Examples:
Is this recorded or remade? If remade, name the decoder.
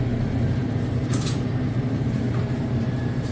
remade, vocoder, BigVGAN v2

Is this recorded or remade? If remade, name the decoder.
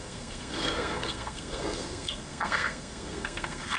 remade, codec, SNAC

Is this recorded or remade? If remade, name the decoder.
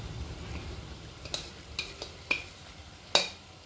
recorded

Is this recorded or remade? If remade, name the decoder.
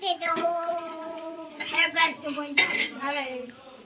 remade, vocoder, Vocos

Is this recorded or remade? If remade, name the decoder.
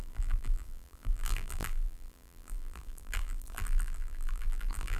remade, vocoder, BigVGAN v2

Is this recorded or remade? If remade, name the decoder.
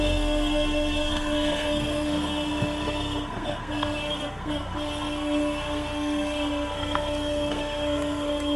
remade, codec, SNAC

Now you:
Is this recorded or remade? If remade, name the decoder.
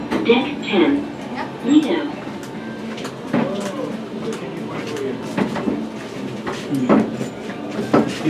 recorded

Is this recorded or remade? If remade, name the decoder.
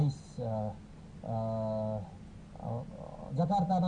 recorded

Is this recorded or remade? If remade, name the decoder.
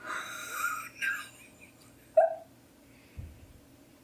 recorded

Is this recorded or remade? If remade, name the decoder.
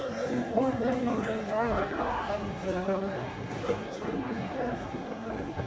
remade, codec, SNAC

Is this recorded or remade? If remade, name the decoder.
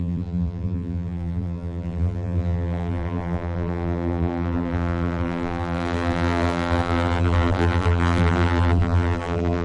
remade, vocoder, BigVGAN v2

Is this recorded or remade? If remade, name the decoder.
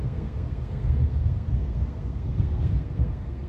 remade, codec, SNAC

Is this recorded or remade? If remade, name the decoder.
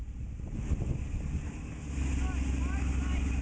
recorded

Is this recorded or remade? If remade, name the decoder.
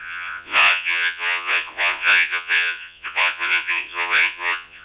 remade, vocoder, Vocos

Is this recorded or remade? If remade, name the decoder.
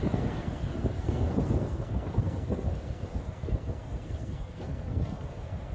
remade, codec, SNAC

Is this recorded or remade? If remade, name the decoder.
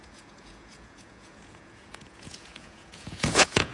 remade, vocoder, Vocos